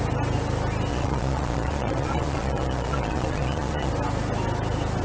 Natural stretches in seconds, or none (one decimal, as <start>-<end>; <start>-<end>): 0.0-0.9; 3.9-5.0